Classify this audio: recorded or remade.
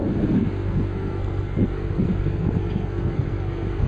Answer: remade